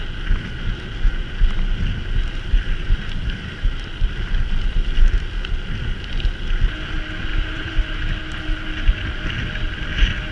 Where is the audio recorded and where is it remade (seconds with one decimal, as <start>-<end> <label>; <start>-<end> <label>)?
0.0-7.3 recorded; 7.3-8.0 remade; 8.0-10.3 recorded